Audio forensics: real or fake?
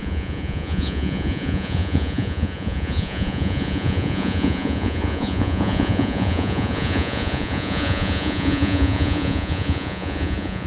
fake